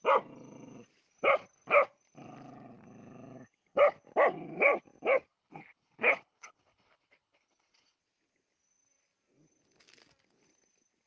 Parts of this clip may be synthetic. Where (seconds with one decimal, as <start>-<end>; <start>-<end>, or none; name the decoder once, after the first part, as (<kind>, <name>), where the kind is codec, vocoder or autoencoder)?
5.3-8.0 (codec, HILCodec)